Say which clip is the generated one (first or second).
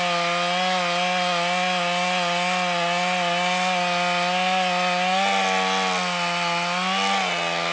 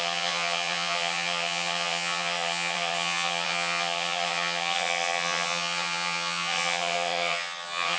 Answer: second